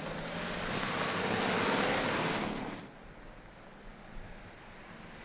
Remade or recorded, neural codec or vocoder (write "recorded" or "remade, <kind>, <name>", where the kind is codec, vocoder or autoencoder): recorded